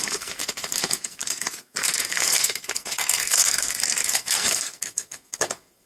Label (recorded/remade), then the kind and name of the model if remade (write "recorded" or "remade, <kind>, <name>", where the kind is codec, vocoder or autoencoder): remade, codec, SNAC